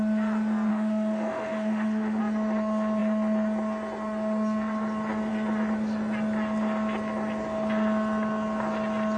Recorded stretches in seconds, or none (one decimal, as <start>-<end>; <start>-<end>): 0.0-0.7; 2.2-9.2